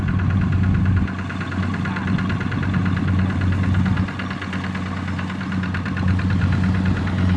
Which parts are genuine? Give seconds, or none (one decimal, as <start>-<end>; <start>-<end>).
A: 0.0-7.4